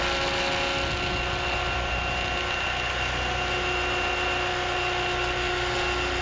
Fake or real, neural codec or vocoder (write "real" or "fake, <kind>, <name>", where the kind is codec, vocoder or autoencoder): real